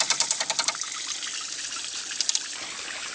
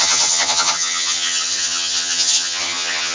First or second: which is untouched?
first